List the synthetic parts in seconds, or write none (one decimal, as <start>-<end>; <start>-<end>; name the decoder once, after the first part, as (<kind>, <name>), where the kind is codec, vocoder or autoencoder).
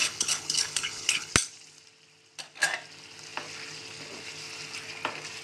0.0-1.3 (codec, HILCodec)